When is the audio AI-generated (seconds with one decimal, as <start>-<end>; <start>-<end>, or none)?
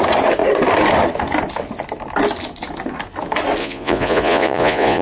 3.6-5.0